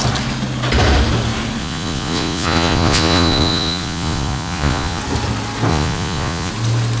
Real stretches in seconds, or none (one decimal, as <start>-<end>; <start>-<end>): 0.0-1.6; 5.0-5.7; 6.5-7.0